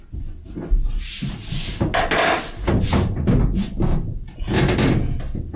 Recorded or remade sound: recorded